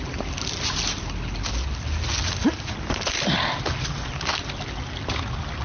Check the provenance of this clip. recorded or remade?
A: recorded